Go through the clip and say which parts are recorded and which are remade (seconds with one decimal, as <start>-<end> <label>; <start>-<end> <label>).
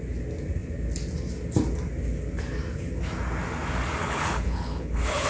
0.0-4.0 recorded; 4.0-5.3 remade